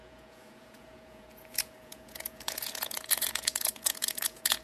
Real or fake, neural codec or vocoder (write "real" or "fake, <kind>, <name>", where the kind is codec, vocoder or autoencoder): fake, vocoder, Vocos